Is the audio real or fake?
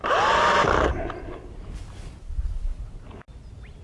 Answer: real